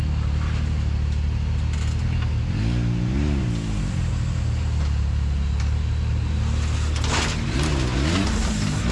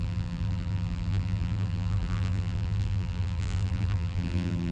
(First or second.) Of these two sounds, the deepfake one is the second